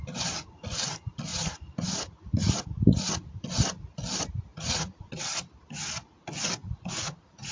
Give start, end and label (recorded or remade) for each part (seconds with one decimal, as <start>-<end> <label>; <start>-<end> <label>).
0.0-1.3 recorded; 1.3-3.3 remade; 3.3-4.5 recorded; 4.5-5.2 remade; 5.2-6.6 recorded; 6.6-7.5 remade